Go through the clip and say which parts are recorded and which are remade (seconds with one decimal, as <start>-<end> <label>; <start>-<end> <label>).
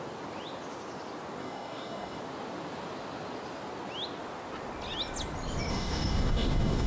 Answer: 0.0-1.4 recorded; 1.4-2.2 remade; 2.2-5.7 recorded; 5.7-6.9 remade